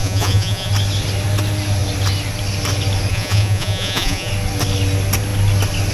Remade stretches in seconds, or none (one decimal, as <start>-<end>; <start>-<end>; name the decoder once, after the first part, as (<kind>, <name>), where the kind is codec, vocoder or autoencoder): 0.0-0.7 (vocoder, Vocos); 3.1-4.3